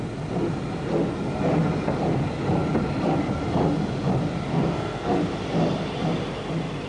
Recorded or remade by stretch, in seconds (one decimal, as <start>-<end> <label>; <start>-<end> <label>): 0.0-4.5 recorded; 4.5-5.2 remade; 5.2-6.9 recorded